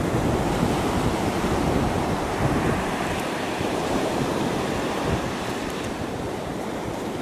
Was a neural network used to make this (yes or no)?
yes